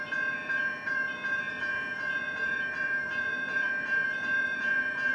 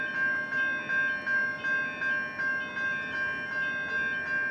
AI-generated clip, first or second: first